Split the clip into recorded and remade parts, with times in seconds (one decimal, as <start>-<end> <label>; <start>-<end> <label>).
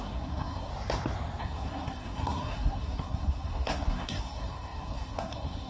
0.0-0.7 remade; 0.7-1.4 recorded; 1.4-5.7 remade